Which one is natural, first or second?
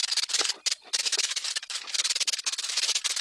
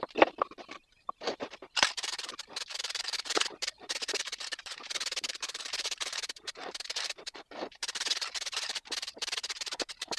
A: first